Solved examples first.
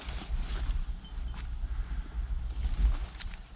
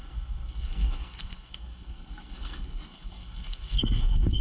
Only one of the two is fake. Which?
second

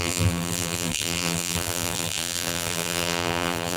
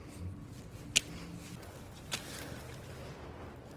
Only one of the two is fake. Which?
first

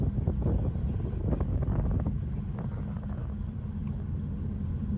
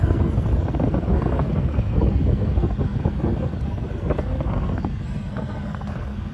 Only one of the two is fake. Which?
second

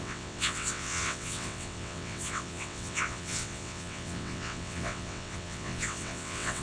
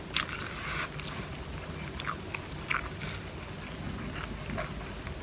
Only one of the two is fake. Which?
first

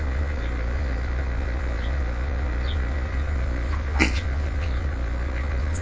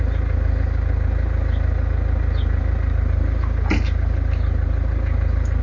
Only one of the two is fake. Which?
first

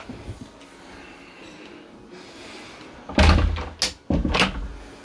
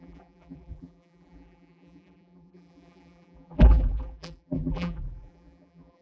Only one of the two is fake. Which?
second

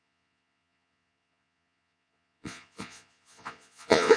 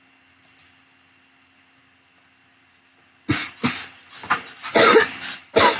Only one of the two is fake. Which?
first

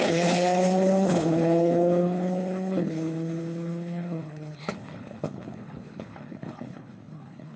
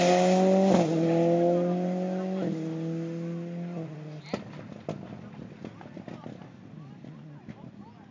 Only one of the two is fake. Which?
first